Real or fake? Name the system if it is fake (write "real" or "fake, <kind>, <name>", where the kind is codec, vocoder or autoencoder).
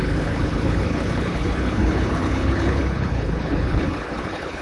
fake, codec, HILCodec